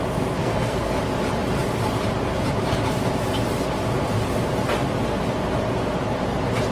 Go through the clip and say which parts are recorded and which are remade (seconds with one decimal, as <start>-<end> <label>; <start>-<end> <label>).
0.0-0.4 recorded; 0.4-0.9 remade; 0.9-6.7 recorded